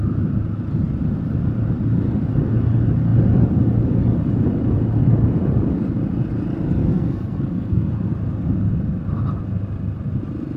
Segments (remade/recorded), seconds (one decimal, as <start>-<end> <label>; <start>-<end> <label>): 0.0-6.8 recorded; 6.8-7.9 remade; 7.9-10.6 recorded